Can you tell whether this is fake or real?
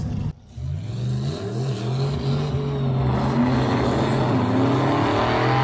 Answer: real